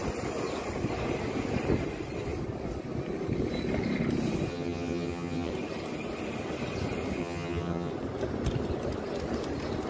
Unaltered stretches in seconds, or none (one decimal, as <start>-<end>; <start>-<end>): 0.0-4.5; 5.5-7.2; 7.9-9.9